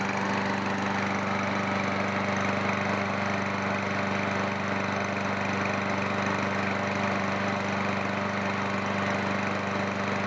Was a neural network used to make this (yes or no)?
no